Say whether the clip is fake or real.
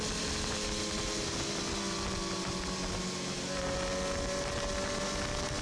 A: real